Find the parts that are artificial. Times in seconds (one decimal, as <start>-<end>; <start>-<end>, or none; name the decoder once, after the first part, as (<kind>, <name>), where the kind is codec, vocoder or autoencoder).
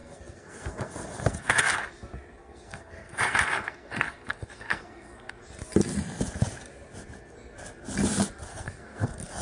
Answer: 0.0-1.9 (codec, SNAC); 2.4-5.4; 8.5-9.4